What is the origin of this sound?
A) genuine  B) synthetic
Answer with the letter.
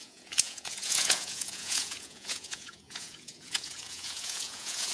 B